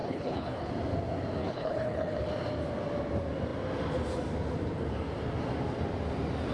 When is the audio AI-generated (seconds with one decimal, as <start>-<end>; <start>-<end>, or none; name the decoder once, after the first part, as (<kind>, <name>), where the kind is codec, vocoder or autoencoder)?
0.0-0.7 (codec, HILCodec); 1.4-2.3

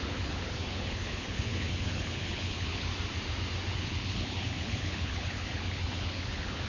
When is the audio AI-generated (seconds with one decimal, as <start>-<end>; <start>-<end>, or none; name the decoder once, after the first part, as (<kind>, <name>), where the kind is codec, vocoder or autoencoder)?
0.0-2.9 (codec, HILCodec); 3.7-6.7